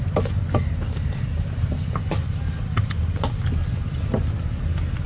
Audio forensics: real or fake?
real